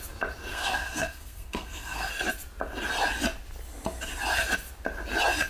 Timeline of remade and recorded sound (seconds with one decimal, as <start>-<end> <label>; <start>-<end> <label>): 0.0-0.5 recorded; 0.5-2.1 remade; 2.1-5.5 recorded